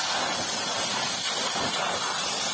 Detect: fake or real real